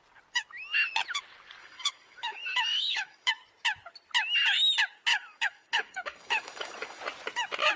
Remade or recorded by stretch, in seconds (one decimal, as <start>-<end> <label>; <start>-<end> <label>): 0.0-1.6 recorded; 1.6-3.3 remade; 3.3-5.1 recorded; 5.1-7.0 remade; 7.0-7.8 recorded